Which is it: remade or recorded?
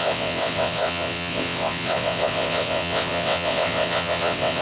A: remade